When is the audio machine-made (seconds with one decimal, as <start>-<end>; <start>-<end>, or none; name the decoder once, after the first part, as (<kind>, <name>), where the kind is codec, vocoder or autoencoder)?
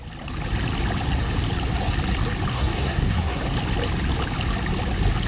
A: 2.5-3.4 (codec, SNAC)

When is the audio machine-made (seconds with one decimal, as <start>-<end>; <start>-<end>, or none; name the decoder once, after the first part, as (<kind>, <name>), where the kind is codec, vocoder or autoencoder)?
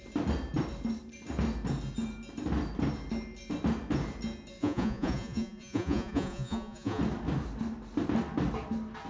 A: 4.6-7.0 (vocoder, Vocos)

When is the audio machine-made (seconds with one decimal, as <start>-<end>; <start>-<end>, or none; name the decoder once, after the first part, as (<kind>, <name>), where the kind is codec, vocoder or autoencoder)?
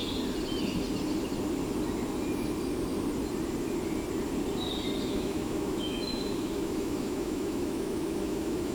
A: 5.1-8.7 (autoencoder, DAC-VAE)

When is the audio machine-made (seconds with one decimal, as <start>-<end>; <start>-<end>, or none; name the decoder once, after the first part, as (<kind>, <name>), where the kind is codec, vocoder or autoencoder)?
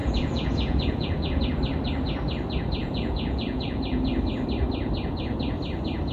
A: 0.0-1.4 (vocoder, Vocos); 2.8-4.1